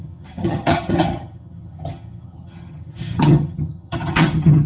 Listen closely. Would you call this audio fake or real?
fake